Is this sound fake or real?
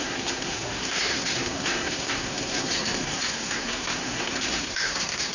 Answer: fake